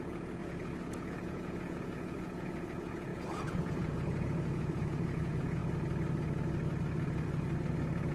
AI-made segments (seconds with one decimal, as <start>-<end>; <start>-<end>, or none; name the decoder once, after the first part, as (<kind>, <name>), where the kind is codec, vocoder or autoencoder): 0.0-5.6 (vocoder, Vocos)